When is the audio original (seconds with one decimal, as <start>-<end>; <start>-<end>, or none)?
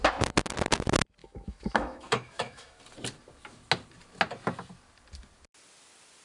0.0-1.2; 2.8-6.2